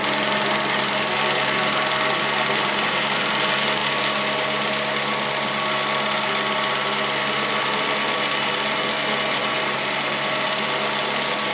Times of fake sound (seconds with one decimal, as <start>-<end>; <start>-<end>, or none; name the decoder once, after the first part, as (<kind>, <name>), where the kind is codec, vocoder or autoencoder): 9.4-10.0 (vocoder, BigVGAN v2)